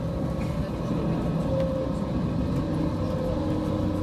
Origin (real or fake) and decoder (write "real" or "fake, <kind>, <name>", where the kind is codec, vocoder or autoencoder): real